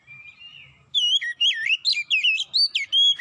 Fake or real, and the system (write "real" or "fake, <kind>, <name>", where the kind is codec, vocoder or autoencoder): real